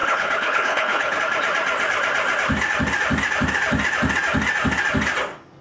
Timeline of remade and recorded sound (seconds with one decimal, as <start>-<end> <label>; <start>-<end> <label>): 0.0-1.2 remade; 1.2-5.6 recorded